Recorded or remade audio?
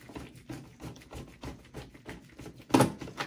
recorded